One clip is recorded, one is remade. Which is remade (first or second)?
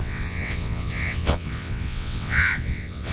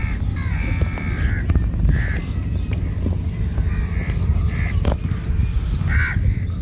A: first